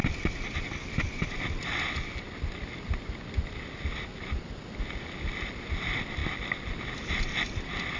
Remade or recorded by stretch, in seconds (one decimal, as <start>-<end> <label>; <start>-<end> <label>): 0.0-8.0 recorded